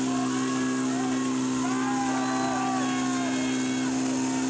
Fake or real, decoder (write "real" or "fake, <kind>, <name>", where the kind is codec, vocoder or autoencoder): real